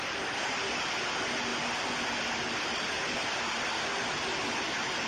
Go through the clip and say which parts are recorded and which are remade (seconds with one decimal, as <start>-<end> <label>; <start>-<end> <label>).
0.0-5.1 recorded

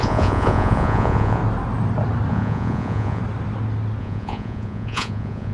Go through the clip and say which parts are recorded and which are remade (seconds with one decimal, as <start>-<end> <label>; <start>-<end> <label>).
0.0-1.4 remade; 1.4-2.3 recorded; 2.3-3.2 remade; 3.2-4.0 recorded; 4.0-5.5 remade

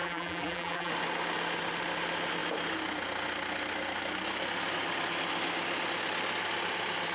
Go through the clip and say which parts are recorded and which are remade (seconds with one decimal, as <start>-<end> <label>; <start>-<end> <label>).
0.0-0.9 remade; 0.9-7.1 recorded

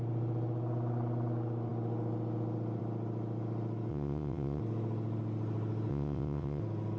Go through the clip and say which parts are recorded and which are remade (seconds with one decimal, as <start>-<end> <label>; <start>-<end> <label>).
0.0-3.9 recorded; 3.9-4.6 remade; 4.6-5.9 recorded; 5.9-6.6 remade; 6.6-7.0 recorded

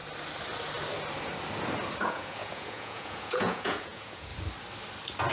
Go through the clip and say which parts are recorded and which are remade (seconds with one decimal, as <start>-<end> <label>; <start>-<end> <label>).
0.0-2.0 recorded; 2.0-4.3 remade; 4.3-5.3 recorded

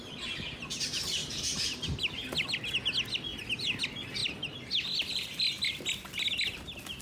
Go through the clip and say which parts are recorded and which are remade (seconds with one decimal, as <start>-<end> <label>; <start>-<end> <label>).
0.0-1.2 recorded; 1.2-2.2 remade; 2.2-3.3 recorded; 3.3-3.8 remade; 3.8-4.2 recorded; 4.2-5.4 remade; 5.4-7.0 recorded